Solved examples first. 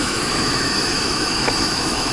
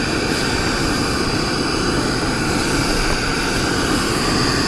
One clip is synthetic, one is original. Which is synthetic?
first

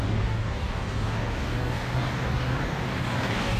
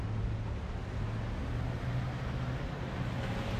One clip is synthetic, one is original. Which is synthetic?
first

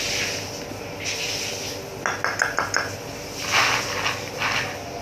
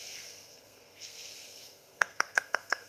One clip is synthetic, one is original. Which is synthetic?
second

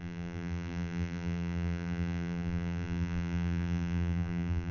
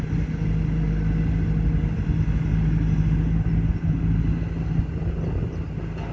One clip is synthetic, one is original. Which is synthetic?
first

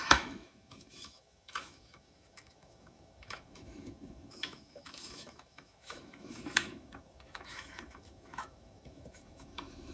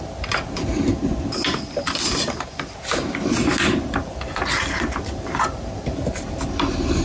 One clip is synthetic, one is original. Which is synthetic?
first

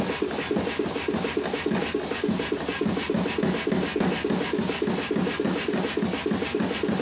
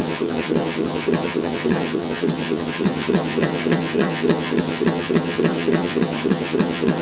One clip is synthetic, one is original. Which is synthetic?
second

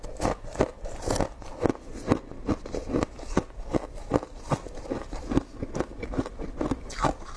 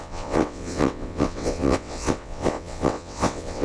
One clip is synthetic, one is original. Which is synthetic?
second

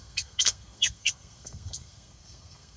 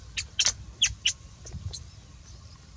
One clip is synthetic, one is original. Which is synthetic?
first